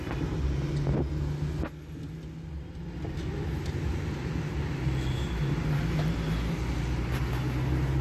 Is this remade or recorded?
recorded